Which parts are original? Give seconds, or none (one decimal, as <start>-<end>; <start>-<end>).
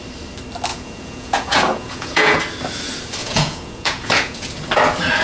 0.0-0.7; 2.4-3.2; 4.5-5.2